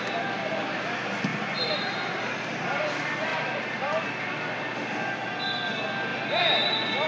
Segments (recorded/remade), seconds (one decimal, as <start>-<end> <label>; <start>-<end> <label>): 0.0-1.3 recorded; 1.3-2.8 remade; 2.8-3.3 recorded; 3.3-4.2 remade; 4.2-6.1 recorded; 6.1-7.1 remade